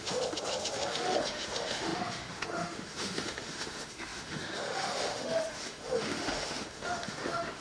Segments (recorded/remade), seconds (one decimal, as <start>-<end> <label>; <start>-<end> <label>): 0.0-7.6 remade